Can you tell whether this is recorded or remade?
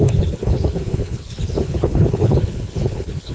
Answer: remade